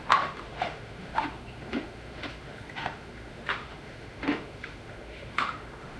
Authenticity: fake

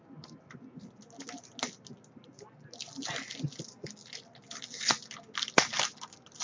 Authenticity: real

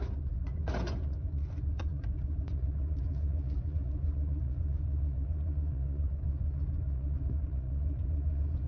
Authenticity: fake